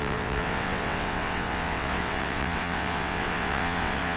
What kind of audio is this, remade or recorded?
remade